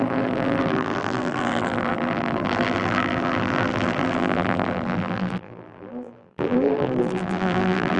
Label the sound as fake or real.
fake